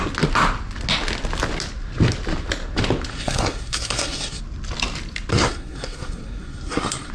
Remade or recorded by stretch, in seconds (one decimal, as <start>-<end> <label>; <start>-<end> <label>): 0.0-3.1 recorded; 3.1-4.4 remade; 4.4-5.3 recorded; 5.3-7.1 remade